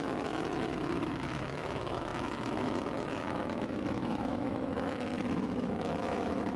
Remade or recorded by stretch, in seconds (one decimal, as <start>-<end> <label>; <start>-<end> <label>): 0.0-6.6 remade